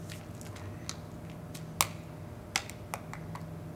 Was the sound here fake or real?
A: real